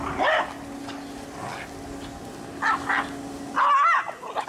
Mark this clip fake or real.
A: real